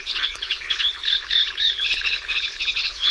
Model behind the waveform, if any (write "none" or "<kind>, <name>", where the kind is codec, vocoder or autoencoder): codec, HILCodec